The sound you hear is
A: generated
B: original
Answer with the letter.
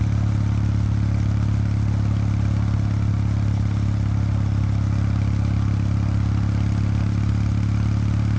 B